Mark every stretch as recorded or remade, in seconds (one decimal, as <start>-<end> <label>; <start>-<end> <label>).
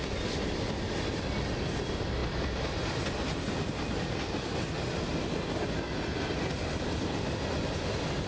0.0-8.3 recorded